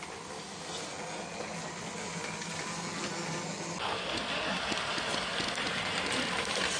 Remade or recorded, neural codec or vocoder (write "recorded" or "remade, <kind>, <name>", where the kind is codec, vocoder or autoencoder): recorded